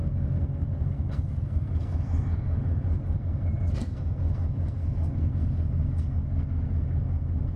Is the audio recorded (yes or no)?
no